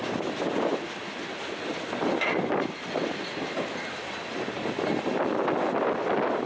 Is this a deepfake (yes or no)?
no